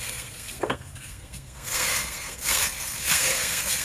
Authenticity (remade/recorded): remade